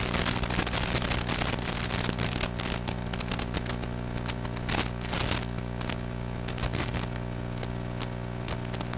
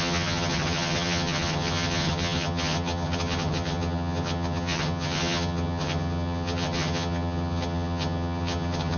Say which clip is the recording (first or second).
first